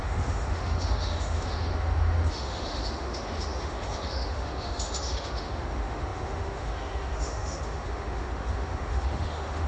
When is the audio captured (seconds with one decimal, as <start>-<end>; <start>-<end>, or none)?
none